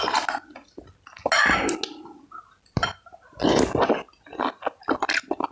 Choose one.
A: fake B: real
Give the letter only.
B